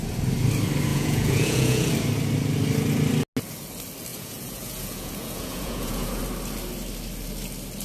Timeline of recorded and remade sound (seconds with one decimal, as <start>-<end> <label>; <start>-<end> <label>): 0.0-0.9 recorded; 0.9-1.9 remade; 1.9-4.1 recorded; 4.1-6.2 remade; 6.2-7.8 recorded

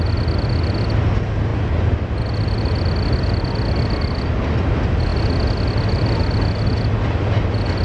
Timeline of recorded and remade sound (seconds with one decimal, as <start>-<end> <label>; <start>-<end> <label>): 0.0-7.8 recorded

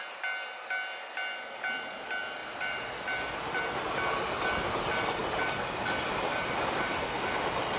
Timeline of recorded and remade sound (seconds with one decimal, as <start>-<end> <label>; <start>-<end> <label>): 0.0-2.4 recorded; 2.4-3.6 remade; 3.6-5.2 recorded; 5.2-7.0 remade; 7.0-7.8 recorded

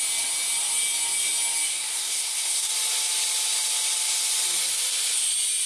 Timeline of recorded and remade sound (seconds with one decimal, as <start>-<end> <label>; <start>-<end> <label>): 0.0-1.7 recorded; 1.7-2.7 remade; 2.7-5.7 recorded

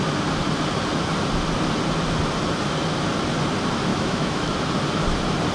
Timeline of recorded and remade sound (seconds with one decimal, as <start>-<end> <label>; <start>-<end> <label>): 0.0-3.9 recorded; 3.9-4.7 remade; 4.7-5.5 recorded

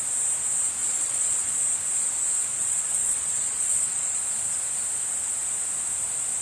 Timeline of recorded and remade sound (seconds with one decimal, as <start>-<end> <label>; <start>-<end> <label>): 0.0-0.8 recorded; 0.8-1.5 remade; 1.5-2.5 recorded; 2.5-4.2 remade; 4.2-6.4 recorded

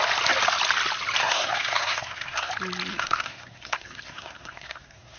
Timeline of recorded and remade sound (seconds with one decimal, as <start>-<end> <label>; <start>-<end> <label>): 0.0-1.2 recorded; 1.2-2.5 remade; 2.5-2.9 recorded; 2.9-5.2 remade

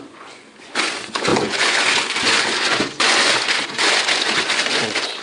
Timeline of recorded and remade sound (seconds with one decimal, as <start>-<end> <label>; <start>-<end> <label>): 0.0-5.2 remade